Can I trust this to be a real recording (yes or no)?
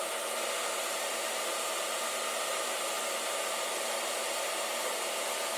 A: no